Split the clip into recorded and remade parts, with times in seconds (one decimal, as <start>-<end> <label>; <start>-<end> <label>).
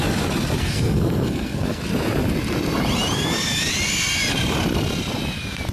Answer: 0.0-0.6 recorded; 0.6-1.8 remade; 1.8-5.7 recorded